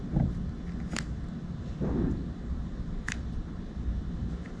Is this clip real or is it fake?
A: real